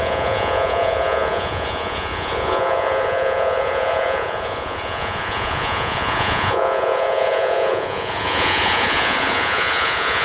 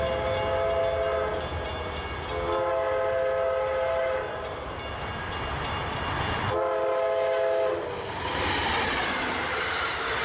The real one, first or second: second